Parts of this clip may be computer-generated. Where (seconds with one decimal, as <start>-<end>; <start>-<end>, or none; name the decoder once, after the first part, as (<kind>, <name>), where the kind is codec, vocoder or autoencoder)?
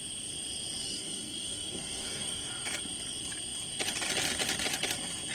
0.8-2.5 (codec, DAC)